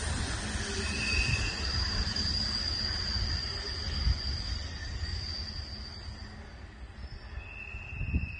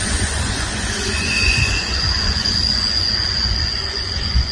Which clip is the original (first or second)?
first